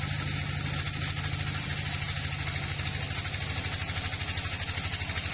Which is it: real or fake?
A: real